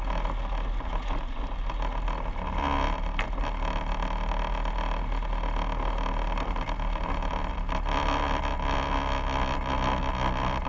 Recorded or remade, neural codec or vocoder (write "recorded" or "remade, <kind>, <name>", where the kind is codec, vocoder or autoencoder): recorded